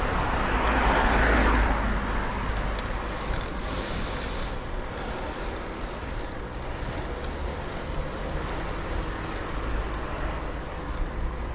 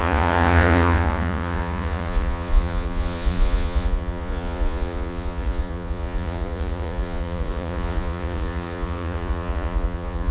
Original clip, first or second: first